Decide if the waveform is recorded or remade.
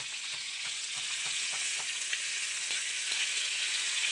remade